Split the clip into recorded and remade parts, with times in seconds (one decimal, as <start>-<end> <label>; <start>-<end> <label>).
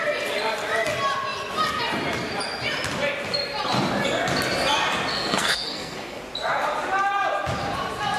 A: 0.0-5.1 recorded; 5.1-6.2 remade; 6.2-8.2 recorded